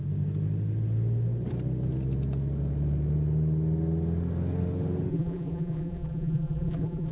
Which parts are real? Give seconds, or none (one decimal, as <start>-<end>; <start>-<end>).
0.0-5.1